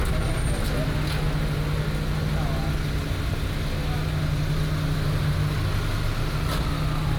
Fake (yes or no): no